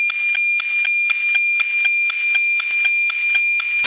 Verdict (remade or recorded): recorded